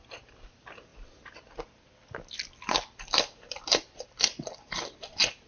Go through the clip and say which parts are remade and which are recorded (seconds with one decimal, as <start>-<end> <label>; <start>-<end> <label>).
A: 0.0-5.5 recorded